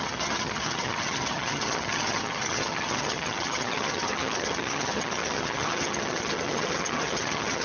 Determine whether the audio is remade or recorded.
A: remade